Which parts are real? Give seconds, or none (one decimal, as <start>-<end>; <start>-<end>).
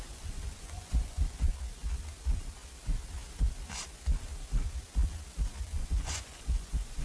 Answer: 1.5-5.6